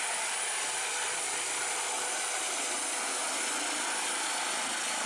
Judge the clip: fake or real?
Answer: real